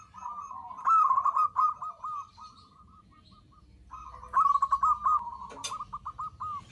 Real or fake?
real